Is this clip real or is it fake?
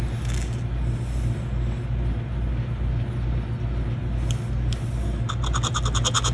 real